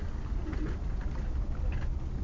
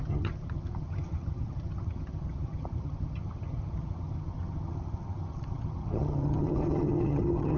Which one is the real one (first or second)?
first